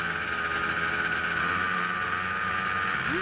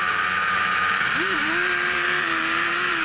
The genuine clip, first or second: first